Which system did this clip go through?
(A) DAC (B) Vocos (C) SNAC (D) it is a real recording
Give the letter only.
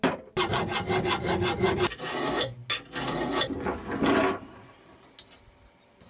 D